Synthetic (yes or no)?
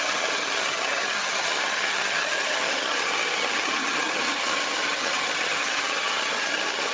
yes